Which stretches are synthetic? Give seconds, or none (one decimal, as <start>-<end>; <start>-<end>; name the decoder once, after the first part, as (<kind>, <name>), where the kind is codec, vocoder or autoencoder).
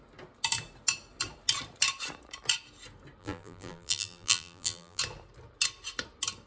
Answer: 3.2-5.0 (vocoder, BigVGAN v2)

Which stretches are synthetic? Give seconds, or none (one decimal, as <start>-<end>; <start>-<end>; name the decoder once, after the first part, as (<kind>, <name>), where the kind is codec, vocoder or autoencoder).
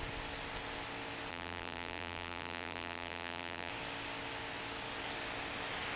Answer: 1.3-3.7 (vocoder, BigVGAN v2)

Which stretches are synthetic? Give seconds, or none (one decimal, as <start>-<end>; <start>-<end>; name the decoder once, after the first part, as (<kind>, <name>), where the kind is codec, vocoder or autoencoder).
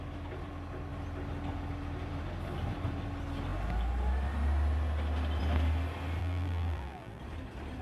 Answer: 6.2-7.2 (vocoder, BigVGAN v2)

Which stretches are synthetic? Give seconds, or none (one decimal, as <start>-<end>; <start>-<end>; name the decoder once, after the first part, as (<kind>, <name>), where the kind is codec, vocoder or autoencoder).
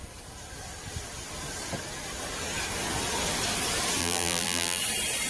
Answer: 4.0-4.8 (vocoder, BigVGAN v2)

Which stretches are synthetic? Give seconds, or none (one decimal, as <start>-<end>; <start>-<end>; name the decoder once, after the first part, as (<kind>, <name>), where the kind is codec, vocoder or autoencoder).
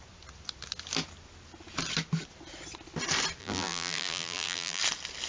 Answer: 3.4-4.8 (vocoder, BigVGAN v2)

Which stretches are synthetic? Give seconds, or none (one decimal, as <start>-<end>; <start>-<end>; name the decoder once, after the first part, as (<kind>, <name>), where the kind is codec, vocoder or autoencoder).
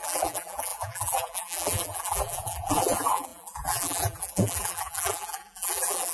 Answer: 0.0-6.1 (vocoder, BigVGAN v2)